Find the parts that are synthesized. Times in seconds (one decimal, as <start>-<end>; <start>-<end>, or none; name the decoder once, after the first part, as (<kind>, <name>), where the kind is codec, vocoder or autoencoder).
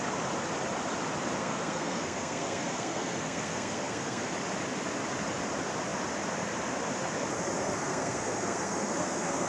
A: 1.4-4.3 (codec, SNAC); 7.6-9.5